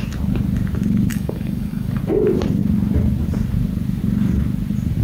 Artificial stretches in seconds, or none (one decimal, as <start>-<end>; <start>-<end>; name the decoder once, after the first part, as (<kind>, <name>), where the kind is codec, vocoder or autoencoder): 1.1-2.0 (codec, DAC)